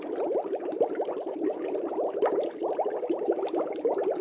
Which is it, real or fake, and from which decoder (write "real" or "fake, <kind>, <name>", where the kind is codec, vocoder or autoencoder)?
real